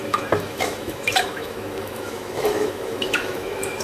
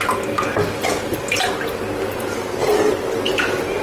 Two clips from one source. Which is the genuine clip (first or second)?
second